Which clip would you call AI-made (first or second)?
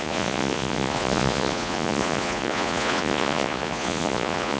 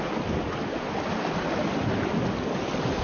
first